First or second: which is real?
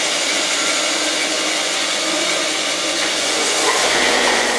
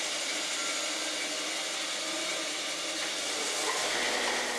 second